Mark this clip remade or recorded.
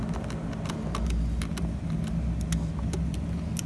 recorded